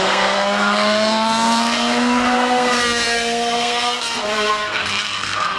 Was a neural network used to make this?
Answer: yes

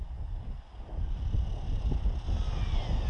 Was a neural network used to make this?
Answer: no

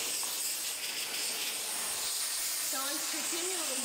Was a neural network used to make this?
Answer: no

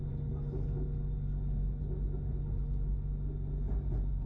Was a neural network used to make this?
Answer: no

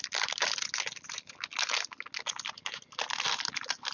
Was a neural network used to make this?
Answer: no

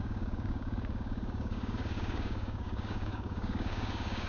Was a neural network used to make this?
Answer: yes